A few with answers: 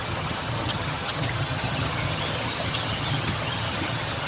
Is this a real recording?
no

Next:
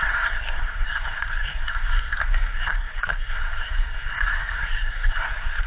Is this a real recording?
no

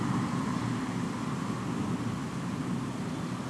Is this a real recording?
yes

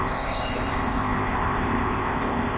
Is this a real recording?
no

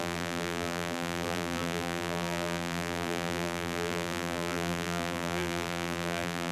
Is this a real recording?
no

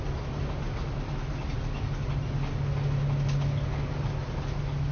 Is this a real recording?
yes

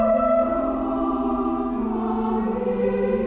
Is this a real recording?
yes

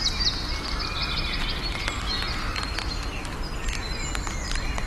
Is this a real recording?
yes